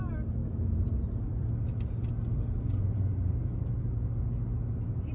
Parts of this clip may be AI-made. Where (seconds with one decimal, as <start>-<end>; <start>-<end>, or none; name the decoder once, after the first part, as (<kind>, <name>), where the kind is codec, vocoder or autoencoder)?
0.4-1.5 (vocoder, BigVGAN v2)